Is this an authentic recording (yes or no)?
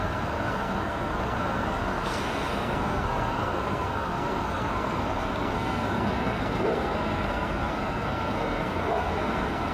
no